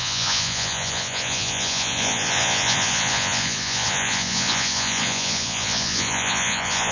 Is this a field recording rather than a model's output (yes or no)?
no